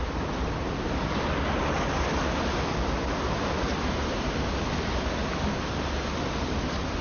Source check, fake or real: real